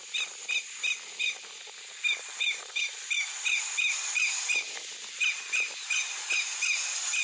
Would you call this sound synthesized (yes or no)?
no